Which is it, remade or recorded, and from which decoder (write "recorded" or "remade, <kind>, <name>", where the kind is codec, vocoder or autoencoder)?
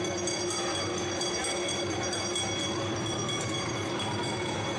recorded